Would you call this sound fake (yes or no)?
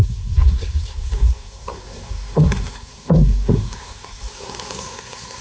yes